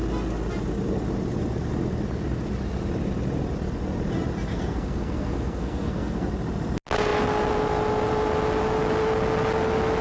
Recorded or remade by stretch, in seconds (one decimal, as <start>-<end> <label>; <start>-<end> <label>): 0.0-4.5 recorded; 4.5-6.3 remade; 6.3-10.0 recorded

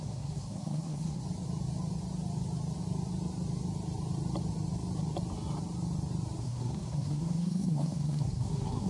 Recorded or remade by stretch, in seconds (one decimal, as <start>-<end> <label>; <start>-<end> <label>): 0.0-1.2 remade; 1.2-6.4 recorded; 6.4-8.9 remade

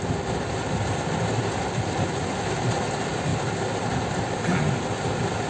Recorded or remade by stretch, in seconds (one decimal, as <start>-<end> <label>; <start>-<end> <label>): 0.0-5.5 recorded